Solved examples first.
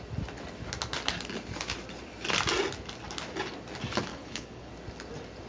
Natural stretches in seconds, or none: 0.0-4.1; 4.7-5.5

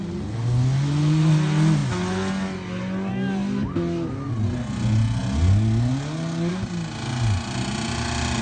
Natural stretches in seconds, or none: 0.0-8.4